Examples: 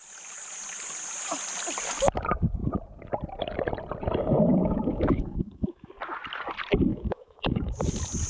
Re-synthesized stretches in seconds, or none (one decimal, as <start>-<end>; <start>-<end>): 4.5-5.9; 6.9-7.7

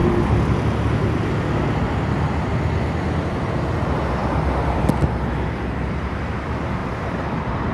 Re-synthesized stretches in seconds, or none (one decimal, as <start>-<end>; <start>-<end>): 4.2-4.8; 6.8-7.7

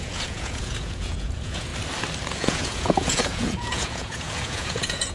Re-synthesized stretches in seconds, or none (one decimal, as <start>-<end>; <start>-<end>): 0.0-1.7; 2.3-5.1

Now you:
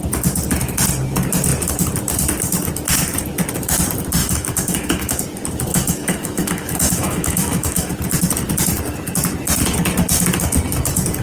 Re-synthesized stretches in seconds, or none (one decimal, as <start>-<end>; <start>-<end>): 4.2-5.2; 5.7-7.9